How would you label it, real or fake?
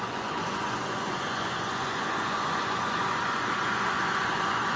fake